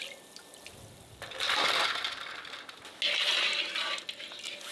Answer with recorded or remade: recorded